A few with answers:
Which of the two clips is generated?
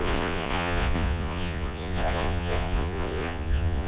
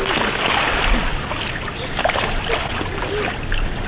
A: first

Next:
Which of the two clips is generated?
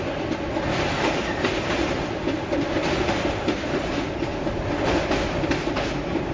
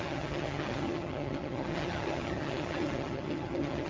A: second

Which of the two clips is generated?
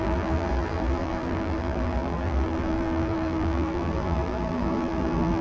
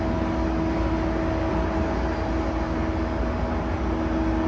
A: first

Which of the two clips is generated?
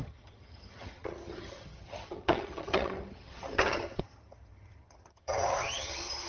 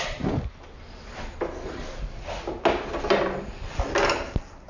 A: first